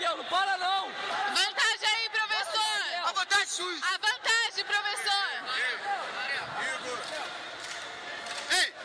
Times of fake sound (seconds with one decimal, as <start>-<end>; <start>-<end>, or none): none